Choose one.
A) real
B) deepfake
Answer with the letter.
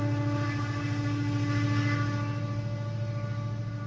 A